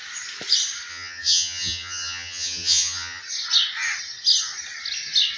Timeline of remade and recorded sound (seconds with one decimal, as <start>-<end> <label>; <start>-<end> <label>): 0.0-0.9 recorded; 0.9-3.2 remade; 3.2-5.4 recorded